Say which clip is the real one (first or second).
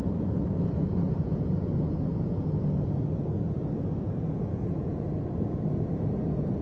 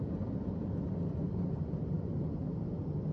second